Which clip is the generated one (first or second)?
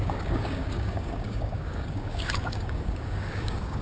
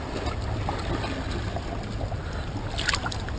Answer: first